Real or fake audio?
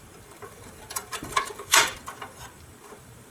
fake